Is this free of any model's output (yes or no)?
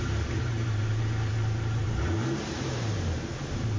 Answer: no